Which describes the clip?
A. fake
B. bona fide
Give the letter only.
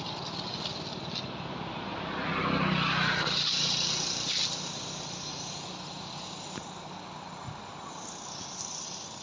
B